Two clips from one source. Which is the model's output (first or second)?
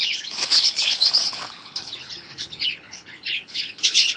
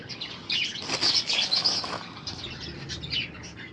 first